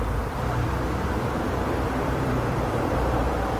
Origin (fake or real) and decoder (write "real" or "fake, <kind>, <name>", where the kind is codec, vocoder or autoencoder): fake, vocoder, BigVGAN v2